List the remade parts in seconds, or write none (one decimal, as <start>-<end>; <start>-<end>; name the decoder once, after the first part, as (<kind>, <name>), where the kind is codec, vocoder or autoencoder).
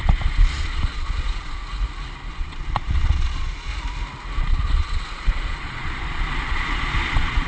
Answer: 0.0-1.6 (vocoder, Vocos); 2.3-3.7; 4.4-7.5